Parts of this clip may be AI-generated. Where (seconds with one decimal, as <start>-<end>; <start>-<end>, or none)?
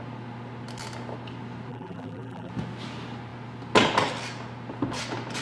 1.7-2.5